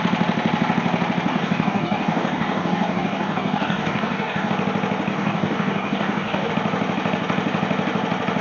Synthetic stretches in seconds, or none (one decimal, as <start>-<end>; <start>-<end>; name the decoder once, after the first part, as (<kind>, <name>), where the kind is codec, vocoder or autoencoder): 1.3-4.5 (codec, DAC); 5.1-6.5